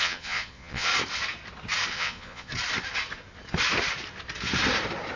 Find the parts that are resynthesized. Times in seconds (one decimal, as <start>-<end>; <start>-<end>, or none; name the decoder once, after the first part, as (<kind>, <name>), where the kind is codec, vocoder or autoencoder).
0.0-0.9 (vocoder, Vocos); 1.9-2.5